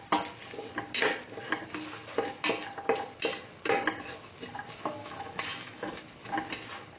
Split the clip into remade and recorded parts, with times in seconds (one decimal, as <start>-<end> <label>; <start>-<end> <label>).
0.0-5.0 recorded; 5.0-5.9 remade; 5.9-7.0 recorded

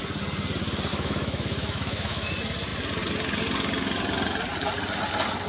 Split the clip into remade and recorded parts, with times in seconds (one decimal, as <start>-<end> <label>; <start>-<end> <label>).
0.0-0.9 recorded; 0.9-2.3 remade; 2.3-5.5 recorded

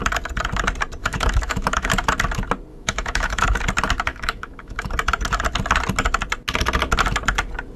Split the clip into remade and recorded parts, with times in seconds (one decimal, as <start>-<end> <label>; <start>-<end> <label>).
0.0-1.0 recorded; 1.0-1.9 remade; 1.9-2.7 recorded; 2.7-3.6 remade; 3.6-4.1 recorded; 4.1-4.9 remade; 4.9-7.8 recorded

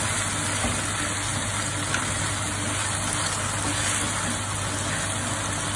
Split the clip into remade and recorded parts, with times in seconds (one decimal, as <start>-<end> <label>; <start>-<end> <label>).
0.0-5.8 recorded

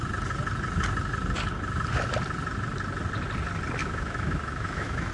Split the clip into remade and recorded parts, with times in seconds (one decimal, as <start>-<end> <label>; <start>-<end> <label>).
0.0-3.8 recorded; 3.8-5.1 remade

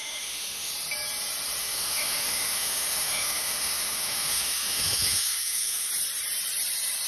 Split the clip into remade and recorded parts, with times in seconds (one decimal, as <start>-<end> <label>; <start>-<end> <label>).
0.0-0.7 remade; 0.7-1.6 recorded; 1.6-5.9 remade; 5.9-7.1 recorded

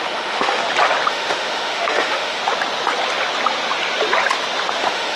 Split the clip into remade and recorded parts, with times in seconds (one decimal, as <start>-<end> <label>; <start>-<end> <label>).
0.0-0.6 remade; 0.6-1.1 recorded; 1.1-2.4 remade; 2.4-4.8 recorded; 4.8-5.2 remade

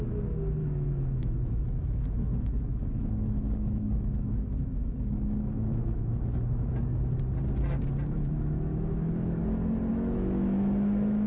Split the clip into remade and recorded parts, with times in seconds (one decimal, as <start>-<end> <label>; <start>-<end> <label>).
0.0-6.9 remade; 6.9-8.1 recorded; 8.1-9.4 remade; 9.4-9.9 recorded; 9.9-11.3 remade